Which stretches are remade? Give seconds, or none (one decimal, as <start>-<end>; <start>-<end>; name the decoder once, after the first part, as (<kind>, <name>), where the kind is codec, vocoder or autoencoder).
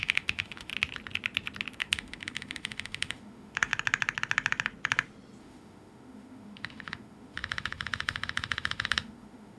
0.0-0.7 (autoencoder, DAC-VAE); 1.7-3.7; 5.4-9.6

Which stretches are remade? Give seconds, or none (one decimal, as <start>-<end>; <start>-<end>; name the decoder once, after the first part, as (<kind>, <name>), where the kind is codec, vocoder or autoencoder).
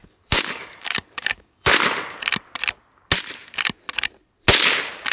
0.0-1.7 (codec, DAC)